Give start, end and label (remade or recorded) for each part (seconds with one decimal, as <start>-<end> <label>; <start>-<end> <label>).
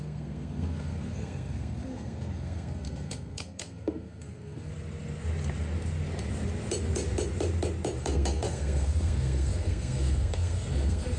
0.0-4.7 remade; 4.7-8.0 recorded; 8.0-11.2 remade